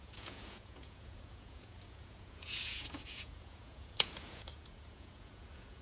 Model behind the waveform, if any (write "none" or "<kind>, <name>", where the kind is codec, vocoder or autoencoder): vocoder, Vocos